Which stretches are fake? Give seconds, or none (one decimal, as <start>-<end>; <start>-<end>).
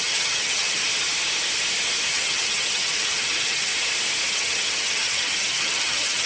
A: 0.0-0.8; 2.1-3.7; 4.3-6.3